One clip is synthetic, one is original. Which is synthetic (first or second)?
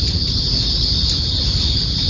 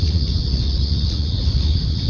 second